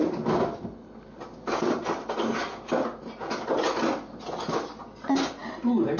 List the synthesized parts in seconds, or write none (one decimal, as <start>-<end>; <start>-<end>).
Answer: none

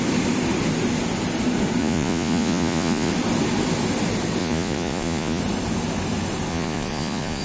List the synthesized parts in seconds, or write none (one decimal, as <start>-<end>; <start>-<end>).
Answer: 1.8-3.1; 4.4-5.4; 6.5-7.4

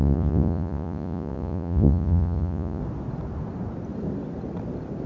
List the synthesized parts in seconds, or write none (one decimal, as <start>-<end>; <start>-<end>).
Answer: 0.0-2.8

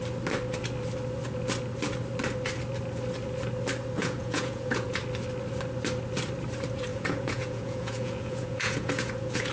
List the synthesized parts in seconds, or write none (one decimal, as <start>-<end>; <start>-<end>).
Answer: 4.0-5.0; 6.9-9.5

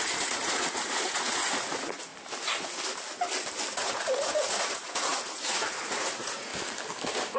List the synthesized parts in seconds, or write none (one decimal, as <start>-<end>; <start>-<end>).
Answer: 0.0-2.1; 3.7-6.5